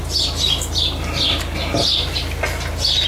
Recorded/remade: recorded